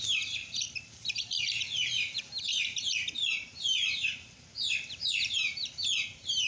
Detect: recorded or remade remade